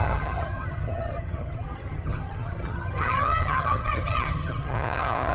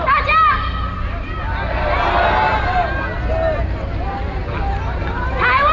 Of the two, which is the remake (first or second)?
first